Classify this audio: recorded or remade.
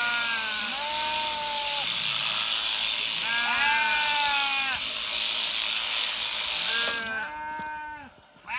recorded